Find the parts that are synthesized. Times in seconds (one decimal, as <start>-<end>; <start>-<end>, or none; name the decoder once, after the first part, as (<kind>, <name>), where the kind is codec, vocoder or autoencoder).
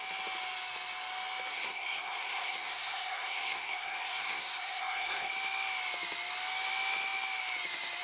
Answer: 1.5-5.3 (codec, SNAC)